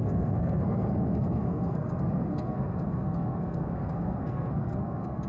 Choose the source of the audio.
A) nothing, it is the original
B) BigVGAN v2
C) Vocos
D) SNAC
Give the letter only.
D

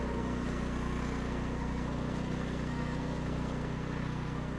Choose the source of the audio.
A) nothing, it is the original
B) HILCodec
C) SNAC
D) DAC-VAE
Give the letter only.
C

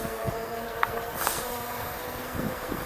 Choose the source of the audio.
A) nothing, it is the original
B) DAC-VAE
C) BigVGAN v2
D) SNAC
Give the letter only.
D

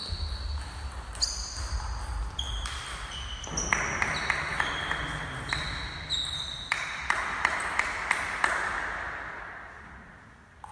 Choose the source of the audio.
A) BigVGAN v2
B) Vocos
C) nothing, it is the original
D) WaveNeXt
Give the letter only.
C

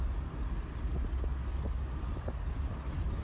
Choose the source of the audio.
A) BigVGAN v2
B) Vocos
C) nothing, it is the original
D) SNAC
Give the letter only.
C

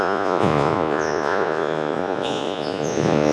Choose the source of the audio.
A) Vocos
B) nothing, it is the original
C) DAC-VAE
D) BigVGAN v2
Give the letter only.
A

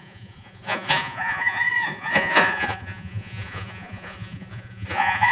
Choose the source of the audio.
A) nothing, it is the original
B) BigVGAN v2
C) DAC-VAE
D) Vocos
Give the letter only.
D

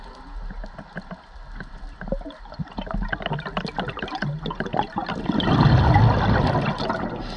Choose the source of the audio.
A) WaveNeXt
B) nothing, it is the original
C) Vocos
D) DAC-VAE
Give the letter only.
B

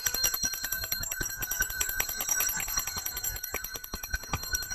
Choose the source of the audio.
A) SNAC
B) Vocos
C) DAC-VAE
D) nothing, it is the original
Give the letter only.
A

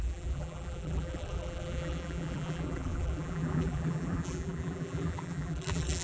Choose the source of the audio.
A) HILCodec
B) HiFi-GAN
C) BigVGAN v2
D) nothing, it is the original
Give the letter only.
C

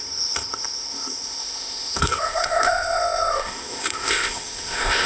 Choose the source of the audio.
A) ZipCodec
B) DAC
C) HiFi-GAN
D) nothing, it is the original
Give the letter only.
A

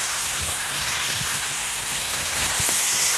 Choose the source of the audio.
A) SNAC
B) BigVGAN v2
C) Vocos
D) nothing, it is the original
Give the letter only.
A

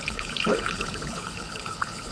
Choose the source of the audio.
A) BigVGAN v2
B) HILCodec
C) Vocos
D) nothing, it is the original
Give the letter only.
B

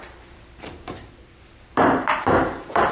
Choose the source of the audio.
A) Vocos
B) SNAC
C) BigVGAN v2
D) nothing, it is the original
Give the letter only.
C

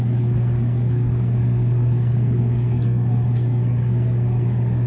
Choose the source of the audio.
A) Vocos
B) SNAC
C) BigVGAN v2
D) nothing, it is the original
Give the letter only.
B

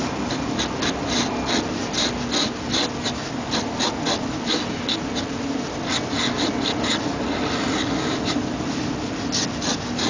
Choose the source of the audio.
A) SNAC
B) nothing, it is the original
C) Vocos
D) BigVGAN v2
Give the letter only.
B